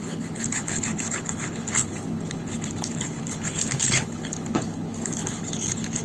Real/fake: fake